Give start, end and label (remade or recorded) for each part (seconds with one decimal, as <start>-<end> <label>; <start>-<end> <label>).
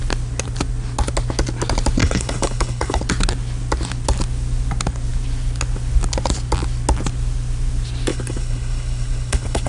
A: 0.0-2.0 recorded; 2.0-3.0 remade; 3.0-8.1 recorded; 8.1-9.7 remade